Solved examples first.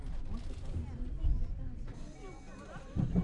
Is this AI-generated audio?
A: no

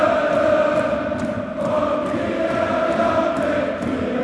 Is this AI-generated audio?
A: no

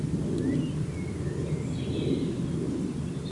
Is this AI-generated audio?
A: no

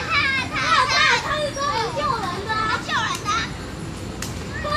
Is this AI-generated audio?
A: no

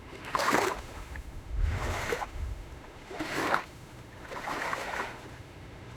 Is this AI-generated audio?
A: yes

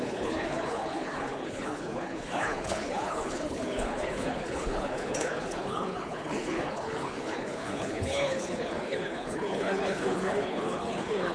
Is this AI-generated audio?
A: yes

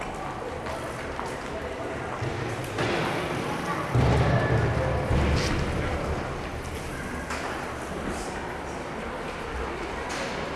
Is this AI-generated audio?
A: no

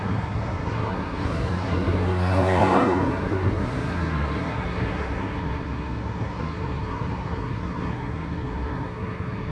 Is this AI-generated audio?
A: yes